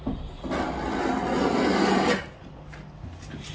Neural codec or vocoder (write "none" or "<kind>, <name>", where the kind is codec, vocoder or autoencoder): none